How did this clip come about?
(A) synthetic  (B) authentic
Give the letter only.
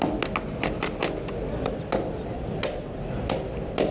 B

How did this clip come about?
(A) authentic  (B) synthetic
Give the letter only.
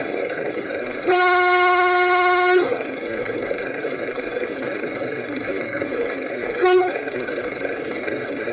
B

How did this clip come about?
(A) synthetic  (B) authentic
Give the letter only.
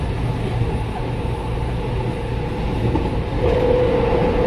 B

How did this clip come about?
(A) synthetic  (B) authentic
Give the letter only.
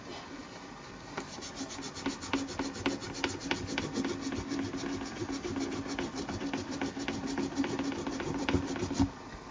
B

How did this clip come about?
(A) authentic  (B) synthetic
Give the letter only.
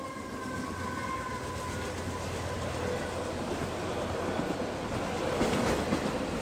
A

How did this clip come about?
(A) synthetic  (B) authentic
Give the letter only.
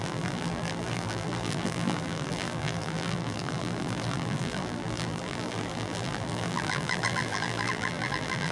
A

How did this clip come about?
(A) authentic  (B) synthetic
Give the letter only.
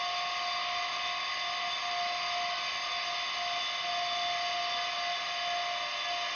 A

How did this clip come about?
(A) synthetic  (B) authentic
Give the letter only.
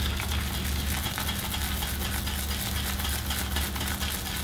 B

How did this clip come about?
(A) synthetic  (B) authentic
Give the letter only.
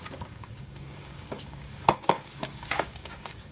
A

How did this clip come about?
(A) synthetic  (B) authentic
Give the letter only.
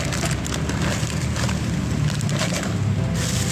B